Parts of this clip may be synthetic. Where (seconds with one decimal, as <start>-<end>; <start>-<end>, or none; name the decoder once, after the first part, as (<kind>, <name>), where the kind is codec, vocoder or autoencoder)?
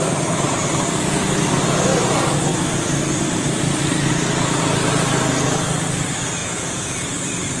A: 6.4-7.1 (vocoder, Vocos)